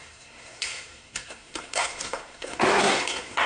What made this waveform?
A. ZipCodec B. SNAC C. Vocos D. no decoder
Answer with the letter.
B